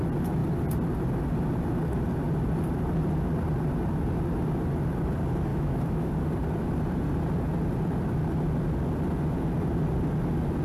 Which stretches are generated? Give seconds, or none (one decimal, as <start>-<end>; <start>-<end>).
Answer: 5.5-6.1